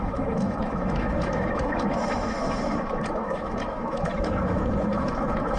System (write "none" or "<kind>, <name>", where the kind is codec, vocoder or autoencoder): autoencoder, DAC-VAE